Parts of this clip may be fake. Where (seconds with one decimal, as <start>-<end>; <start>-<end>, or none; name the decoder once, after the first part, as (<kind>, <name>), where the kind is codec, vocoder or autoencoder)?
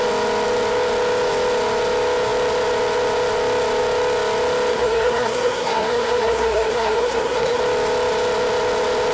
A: 4.7-7.6 (codec, SNAC)